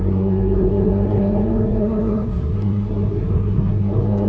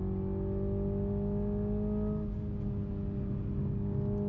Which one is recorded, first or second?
second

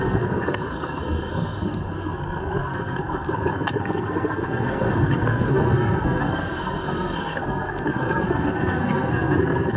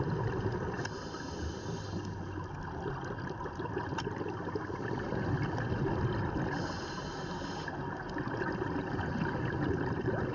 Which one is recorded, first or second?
second